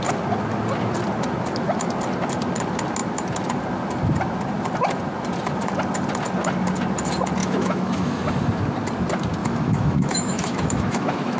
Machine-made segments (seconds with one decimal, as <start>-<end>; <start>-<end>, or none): 7.4-8.2; 9.4-11.4